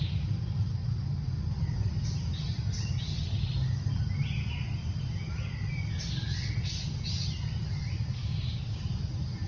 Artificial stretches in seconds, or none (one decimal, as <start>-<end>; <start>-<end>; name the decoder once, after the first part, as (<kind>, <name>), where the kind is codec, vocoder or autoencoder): 8.2-8.8 (codec, DAC)

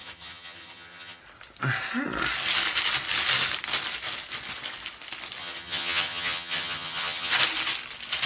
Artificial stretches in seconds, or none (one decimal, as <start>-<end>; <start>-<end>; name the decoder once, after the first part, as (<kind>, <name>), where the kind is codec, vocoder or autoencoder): 0.0-1.2 (vocoder, HiFi-GAN); 5.4-7.3

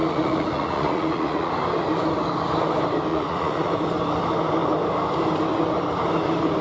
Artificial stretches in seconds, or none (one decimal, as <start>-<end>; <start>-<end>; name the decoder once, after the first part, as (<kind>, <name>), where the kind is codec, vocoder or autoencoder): 0.0-1.5 (vocoder, Vocos); 3.1-3.7

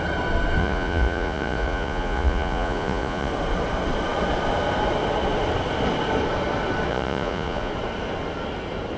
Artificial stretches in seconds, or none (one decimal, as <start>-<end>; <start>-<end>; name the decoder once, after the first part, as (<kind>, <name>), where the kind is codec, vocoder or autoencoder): 0.6-3.3 (vocoder, Vocos); 6.9-7.7

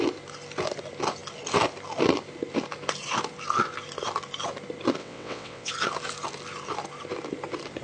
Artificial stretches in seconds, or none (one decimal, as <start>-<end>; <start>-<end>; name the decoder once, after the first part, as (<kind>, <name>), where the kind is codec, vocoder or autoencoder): 5.0-5.7 (vocoder, WaveNeXt)

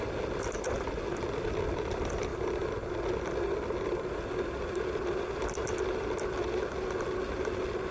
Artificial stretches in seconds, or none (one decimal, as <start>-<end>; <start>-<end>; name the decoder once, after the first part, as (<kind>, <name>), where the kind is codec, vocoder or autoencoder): none